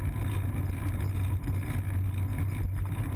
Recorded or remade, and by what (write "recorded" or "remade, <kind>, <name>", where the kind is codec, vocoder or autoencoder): recorded